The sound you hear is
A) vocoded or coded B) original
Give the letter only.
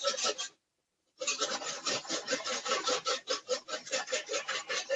A